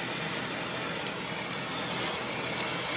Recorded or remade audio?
recorded